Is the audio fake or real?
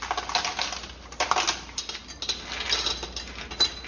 real